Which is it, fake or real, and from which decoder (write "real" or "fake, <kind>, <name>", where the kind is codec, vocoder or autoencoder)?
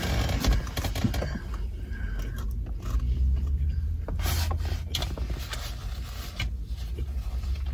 real